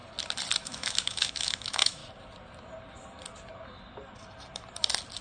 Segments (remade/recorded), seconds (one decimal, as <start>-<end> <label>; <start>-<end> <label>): 0.0-0.6 recorded; 0.6-2.0 remade; 2.0-5.2 recorded